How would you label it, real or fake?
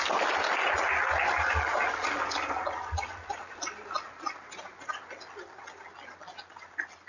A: real